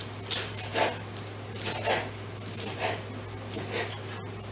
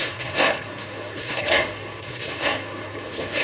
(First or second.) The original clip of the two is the first